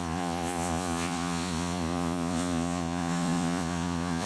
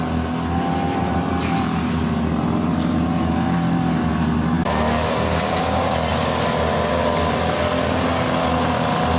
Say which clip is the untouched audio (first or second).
second